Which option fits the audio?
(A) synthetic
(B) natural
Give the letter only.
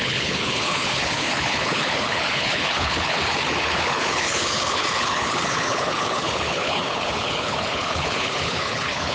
A